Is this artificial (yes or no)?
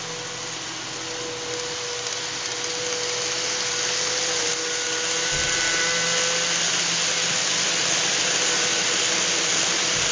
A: no